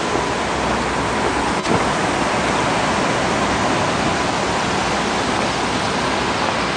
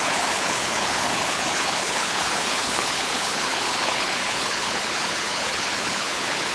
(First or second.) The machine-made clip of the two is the second